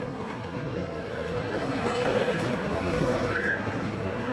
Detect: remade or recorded remade